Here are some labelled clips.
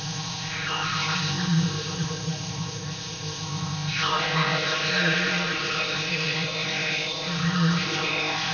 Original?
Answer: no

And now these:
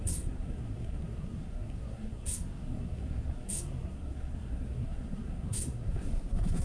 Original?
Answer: no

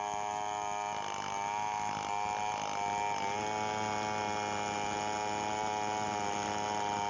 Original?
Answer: yes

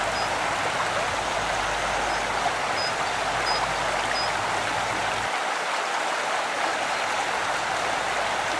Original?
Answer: yes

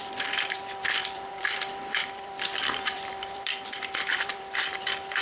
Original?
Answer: no